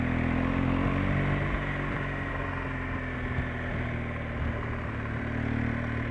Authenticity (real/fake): real